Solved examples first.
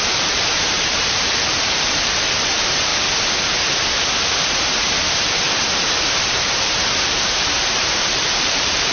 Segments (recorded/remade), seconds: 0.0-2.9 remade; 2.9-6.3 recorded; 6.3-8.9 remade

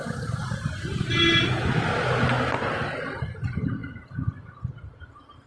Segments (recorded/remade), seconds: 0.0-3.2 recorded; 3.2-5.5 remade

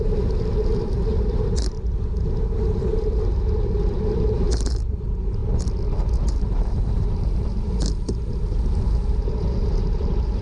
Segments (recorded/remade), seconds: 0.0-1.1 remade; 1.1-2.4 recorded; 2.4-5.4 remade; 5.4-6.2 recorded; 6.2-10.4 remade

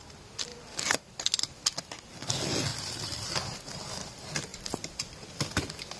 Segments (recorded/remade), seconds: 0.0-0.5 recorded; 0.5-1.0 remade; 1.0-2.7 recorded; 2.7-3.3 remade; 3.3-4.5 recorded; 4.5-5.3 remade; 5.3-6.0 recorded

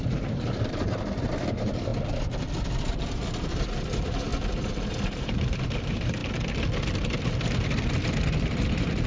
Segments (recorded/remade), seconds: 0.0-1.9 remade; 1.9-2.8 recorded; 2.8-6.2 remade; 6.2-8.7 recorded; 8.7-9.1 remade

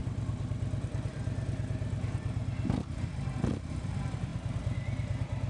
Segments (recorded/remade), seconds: 0.0-2.4 remade; 2.4-3.4 recorded; 3.4-5.5 remade